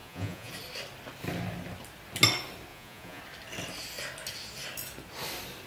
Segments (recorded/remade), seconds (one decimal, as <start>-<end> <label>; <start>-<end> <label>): 0.0-0.5 remade; 0.5-2.7 recorded; 2.7-3.2 remade; 3.2-5.7 recorded